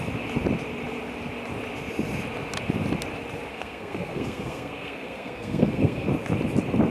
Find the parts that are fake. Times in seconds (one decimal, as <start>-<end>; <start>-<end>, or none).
3.5-6.1